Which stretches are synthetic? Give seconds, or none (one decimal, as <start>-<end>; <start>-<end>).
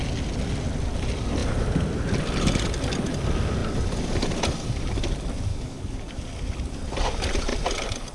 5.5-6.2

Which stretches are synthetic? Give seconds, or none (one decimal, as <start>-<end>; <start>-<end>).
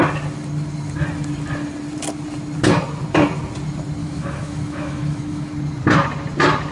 4.0-5.5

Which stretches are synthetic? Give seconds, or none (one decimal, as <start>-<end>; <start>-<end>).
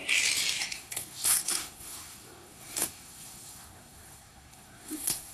0.6-5.3